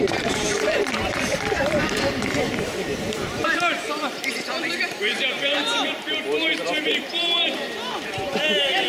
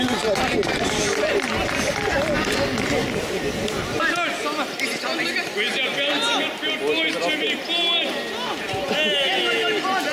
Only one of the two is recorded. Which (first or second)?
second